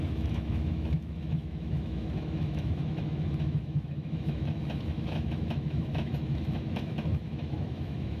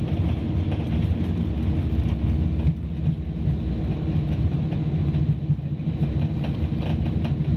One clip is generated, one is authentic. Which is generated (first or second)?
first